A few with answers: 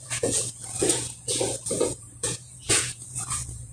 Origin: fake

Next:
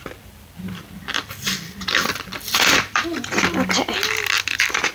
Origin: fake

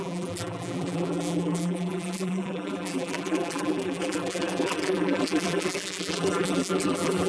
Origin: fake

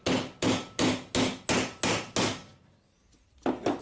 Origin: real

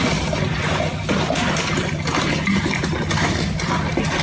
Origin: real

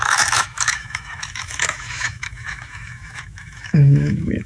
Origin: fake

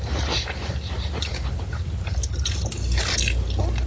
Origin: real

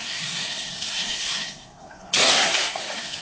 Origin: fake